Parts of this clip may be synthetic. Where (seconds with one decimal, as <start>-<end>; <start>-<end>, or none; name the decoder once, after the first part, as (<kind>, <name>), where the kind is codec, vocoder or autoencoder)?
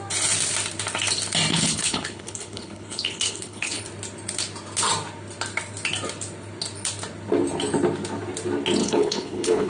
1.5-3.8 (codec, HILCodec); 8.8-9.7